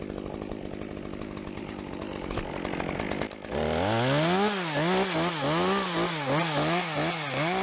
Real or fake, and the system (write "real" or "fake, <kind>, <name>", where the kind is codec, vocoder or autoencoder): real